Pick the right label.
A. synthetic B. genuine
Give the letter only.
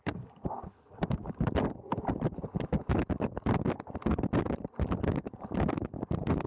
A